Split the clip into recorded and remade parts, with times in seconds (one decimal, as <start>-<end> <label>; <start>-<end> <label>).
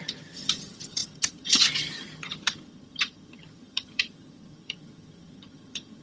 0.0-6.0 remade